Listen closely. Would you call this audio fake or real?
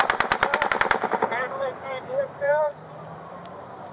fake